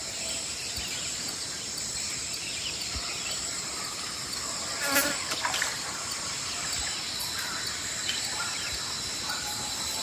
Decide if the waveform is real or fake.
real